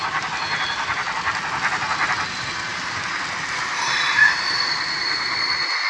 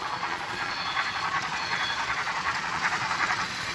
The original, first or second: first